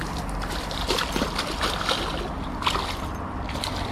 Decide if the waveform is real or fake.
real